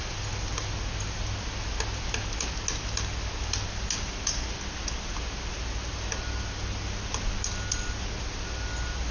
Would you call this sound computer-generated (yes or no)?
no